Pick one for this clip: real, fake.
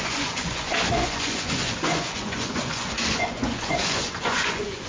fake